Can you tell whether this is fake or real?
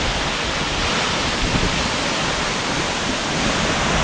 real